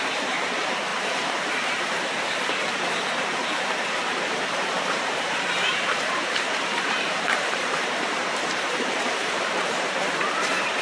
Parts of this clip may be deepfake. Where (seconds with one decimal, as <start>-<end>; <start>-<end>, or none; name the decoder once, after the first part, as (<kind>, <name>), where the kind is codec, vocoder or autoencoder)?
0.0-10.8 (vocoder, BigVGAN v2)